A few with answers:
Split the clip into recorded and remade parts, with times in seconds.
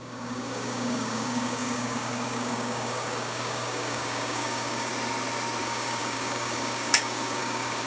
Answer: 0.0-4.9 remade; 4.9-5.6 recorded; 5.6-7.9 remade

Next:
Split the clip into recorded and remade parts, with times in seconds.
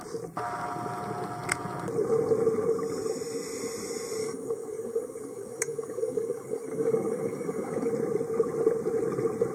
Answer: 0.0-4.2 recorded; 4.2-7.9 remade; 7.9-9.5 recorded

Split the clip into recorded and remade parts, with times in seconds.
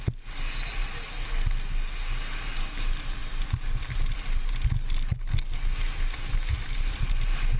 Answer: 0.0-7.6 recorded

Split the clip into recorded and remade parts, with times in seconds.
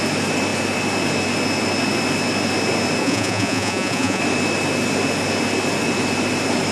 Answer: 0.0-3.0 recorded; 3.0-4.2 remade; 4.2-6.7 recorded